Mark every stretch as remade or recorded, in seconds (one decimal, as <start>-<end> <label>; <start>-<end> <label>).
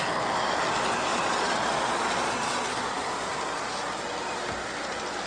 0.0-1.1 recorded; 1.1-3.3 remade; 3.3-5.3 recorded